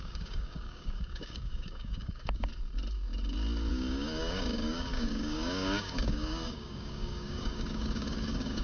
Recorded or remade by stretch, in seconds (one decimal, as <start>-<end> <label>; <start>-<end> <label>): 0.0-2.5 remade; 2.5-3.7 recorded; 3.7-8.6 remade